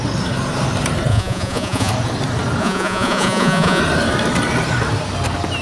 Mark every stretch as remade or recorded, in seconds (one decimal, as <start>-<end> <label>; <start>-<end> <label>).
0.0-1.1 recorded; 1.1-1.9 remade; 1.9-2.6 recorded; 2.6-3.8 remade; 3.8-5.6 recorded